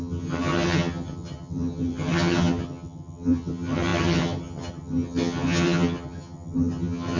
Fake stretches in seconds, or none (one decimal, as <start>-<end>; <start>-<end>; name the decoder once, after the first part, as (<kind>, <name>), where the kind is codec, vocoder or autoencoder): 0.0-7.2 (vocoder, HiFi-GAN)